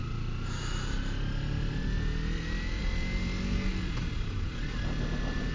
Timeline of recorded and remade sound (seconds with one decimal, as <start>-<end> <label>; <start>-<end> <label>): 0.0-5.5 recorded